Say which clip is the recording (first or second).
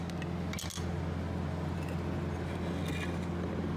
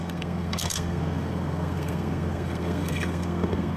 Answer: first